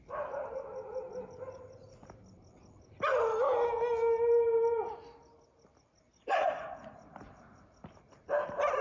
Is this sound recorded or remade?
recorded